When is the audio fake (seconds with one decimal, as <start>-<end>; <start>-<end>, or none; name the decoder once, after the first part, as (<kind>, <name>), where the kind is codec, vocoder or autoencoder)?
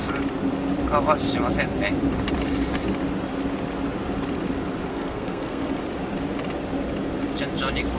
4.9-5.8 (codec, SNAC)